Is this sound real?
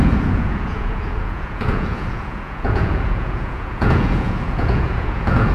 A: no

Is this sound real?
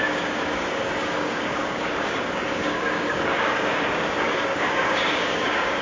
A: no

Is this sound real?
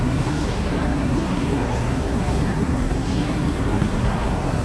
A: no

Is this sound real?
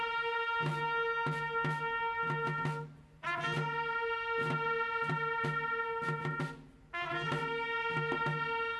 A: yes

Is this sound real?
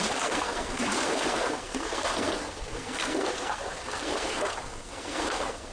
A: no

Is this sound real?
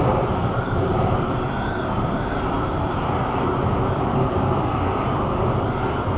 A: no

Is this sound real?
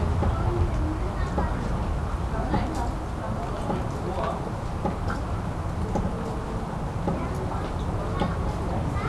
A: yes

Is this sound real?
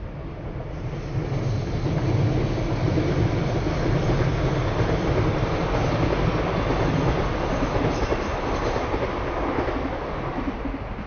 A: yes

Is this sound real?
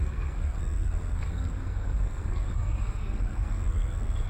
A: no